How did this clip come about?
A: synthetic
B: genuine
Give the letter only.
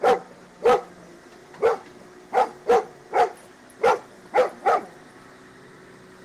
B